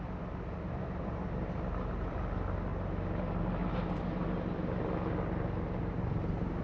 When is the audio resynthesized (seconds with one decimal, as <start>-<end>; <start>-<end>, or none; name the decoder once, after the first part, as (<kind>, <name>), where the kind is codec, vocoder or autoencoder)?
0.0-2.7 (vocoder, BigVGAN v2); 5.9-6.6